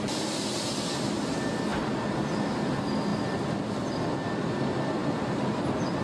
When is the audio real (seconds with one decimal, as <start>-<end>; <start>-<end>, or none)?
0.0-6.0